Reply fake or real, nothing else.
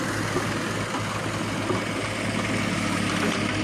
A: real